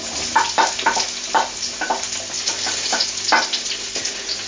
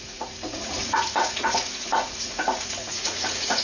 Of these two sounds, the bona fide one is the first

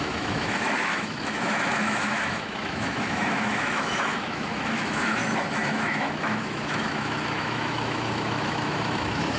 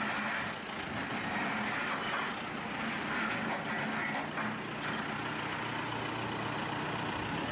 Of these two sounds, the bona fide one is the second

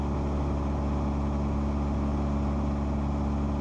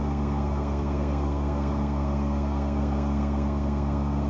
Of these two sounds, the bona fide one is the first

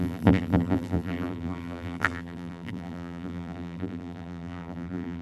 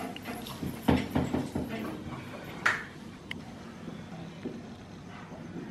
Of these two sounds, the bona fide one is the second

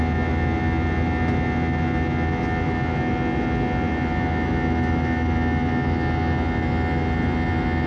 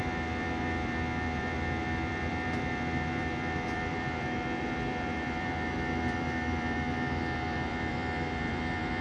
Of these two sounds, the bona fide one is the first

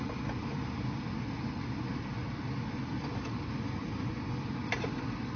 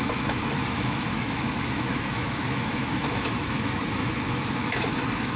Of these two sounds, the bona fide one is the first